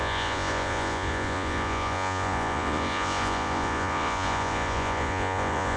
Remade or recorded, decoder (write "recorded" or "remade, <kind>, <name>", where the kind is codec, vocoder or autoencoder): remade, vocoder, Vocos